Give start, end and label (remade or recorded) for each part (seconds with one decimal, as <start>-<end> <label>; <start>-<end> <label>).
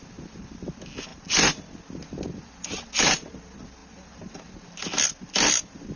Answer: 0.0-6.0 recorded